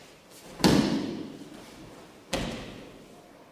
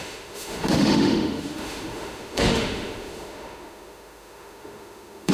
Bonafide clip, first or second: first